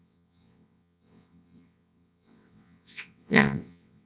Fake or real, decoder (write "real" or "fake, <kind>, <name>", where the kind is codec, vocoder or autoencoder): fake, vocoder, WaveNeXt